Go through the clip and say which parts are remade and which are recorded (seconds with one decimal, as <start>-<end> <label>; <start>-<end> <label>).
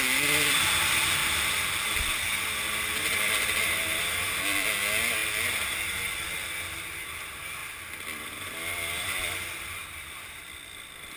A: 0.0-11.2 recorded